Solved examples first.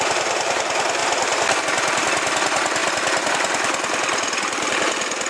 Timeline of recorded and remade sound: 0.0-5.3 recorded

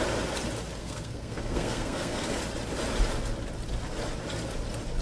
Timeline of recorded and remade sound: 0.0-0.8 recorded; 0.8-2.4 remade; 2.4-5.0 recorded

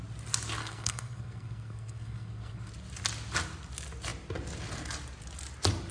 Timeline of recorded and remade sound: 0.0-0.6 recorded; 0.6-2.7 remade; 2.7-5.9 recorded